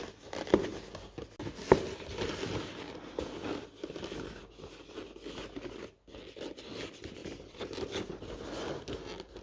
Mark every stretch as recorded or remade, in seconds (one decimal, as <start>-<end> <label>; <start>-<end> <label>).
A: 0.0-7.2 recorded; 7.2-8.4 remade; 8.4-9.4 recorded

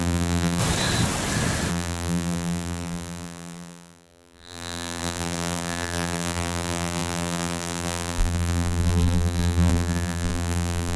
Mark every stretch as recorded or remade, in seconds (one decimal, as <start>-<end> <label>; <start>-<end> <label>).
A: 0.0-0.6 remade; 0.6-1.7 recorded; 1.7-11.0 remade

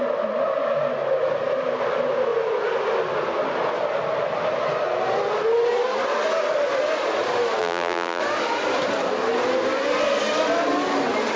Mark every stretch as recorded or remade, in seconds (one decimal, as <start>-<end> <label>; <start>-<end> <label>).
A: 0.0-7.6 recorded; 7.6-8.2 remade; 8.2-11.4 recorded

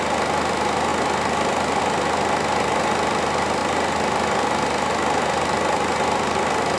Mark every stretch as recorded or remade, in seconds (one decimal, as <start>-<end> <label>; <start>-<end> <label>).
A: 0.0-6.8 recorded

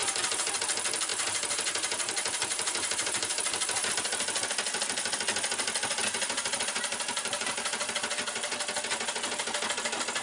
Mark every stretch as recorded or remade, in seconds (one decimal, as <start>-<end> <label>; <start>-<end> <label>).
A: 0.0-0.6 remade; 0.6-1.1 recorded; 1.1-3.9 remade; 3.9-6.0 recorded; 6.0-7.9 remade; 7.9-10.2 recorded

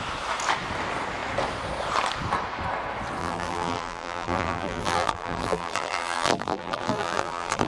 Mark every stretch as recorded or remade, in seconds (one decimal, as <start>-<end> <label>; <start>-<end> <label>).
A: 0.0-3.2 recorded; 3.2-7.7 remade

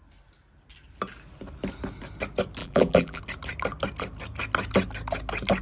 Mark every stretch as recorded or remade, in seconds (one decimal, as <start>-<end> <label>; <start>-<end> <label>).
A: 0.0-2.6 recorded; 2.6-3.2 remade; 3.2-5.6 recorded

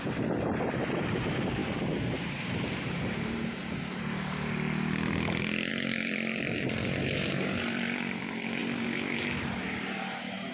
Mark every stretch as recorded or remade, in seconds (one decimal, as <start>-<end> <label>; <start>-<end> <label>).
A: 0.0-1.6 remade; 1.6-2.2 recorded; 2.2-3.6 remade; 3.6-5.7 recorded; 5.7-10.5 remade